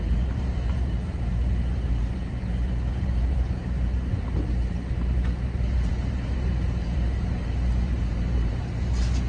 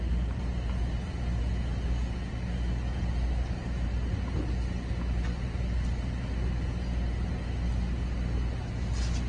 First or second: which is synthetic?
first